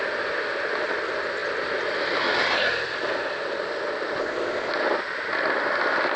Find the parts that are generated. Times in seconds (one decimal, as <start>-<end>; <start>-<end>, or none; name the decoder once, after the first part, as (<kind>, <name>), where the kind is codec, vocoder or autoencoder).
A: 4.2-4.7 (codec, ZipCodec)